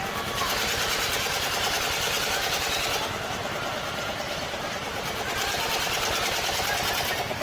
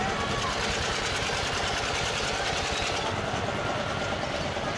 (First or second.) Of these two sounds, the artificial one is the first